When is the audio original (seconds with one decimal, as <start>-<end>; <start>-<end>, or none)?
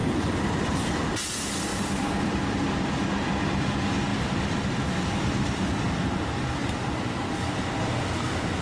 1.1-1.7; 3.2-4.1; 6.0-6.6